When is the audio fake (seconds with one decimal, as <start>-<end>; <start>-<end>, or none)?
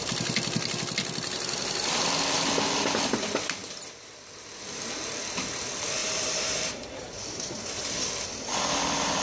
6.0-7.6